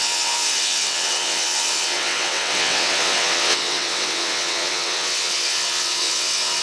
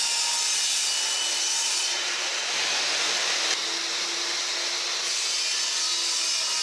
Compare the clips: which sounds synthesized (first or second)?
first